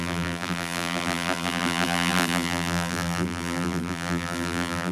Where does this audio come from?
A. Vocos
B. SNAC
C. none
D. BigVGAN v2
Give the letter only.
D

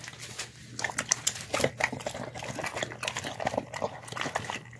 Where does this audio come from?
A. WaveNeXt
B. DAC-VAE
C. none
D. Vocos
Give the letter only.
C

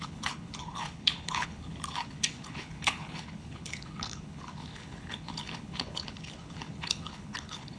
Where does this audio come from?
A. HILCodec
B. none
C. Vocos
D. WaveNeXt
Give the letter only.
A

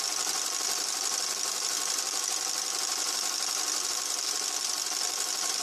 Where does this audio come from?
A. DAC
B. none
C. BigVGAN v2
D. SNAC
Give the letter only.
C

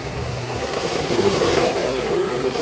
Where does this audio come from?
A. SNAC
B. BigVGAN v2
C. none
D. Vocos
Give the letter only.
A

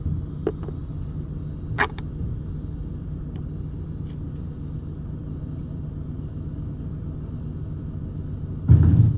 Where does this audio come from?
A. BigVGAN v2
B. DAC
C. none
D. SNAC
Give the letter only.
C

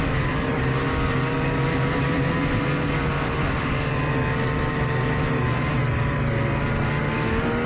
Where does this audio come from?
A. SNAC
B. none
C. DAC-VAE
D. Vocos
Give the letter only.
B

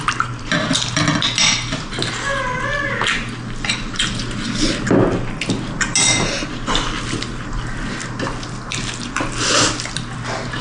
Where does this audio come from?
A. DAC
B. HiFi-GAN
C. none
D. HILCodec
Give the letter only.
C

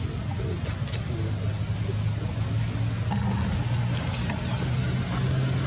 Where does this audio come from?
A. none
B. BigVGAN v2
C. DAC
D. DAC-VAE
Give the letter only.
A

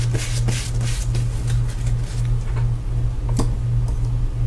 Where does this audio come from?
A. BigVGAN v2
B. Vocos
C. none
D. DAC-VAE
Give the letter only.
C